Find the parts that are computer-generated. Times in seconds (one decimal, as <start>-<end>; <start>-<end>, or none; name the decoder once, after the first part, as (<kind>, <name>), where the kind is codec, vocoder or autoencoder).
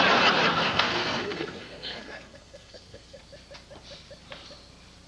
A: 0.5-3.2 (codec, SNAC)